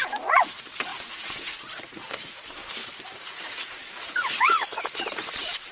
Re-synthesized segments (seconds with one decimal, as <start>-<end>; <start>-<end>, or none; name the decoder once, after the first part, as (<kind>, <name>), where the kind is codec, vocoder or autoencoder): 0.0-2.6 (vocoder, Vocos); 3.2-5.7